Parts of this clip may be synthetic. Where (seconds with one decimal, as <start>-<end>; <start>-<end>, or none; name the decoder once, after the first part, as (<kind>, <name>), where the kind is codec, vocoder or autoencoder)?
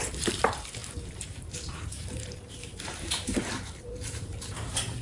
0.0-5.0 (vocoder, BigVGAN v2)